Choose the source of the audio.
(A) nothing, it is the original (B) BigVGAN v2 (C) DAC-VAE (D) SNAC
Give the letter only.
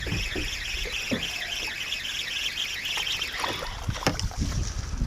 A